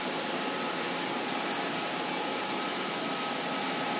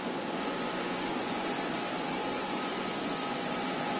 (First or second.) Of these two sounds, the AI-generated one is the second